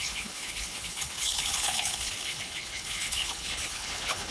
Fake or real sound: fake